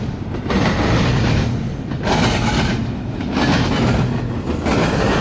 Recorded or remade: recorded